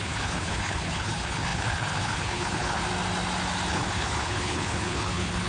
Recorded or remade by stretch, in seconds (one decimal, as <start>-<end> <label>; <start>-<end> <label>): 0.0-2.8 remade; 2.8-3.7 recorded; 3.7-5.5 remade